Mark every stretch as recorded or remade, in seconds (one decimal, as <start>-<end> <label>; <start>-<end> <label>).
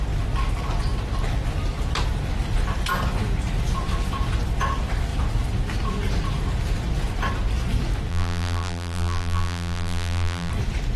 0.0-8.1 recorded; 8.1-10.5 remade; 10.5-11.0 recorded